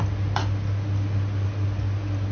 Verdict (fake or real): real